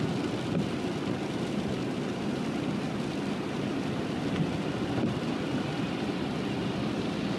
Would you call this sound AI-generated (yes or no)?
yes